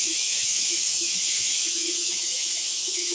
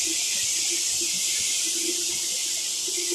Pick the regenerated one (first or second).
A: first